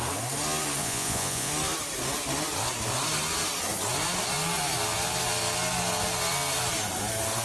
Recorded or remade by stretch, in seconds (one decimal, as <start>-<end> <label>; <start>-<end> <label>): 0.0-0.8 recorded; 0.8-1.5 remade; 1.5-7.4 recorded